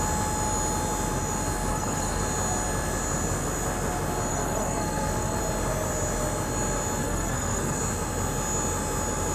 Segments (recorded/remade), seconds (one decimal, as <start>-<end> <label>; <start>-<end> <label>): 0.0-1.7 recorded; 1.7-2.2 remade; 2.2-4.3 recorded; 4.3-5.4 remade; 5.4-7.0 recorded; 7.0-7.8 remade; 7.8-9.3 recorded